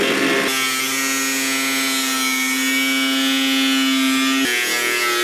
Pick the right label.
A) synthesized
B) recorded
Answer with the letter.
B